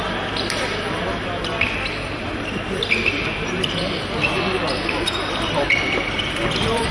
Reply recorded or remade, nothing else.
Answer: remade